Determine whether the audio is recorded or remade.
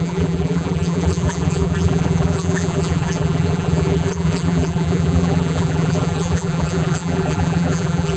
remade